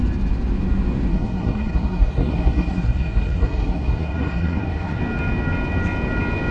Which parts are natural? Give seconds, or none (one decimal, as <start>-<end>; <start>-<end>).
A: 0.0-1.1; 5.0-6.5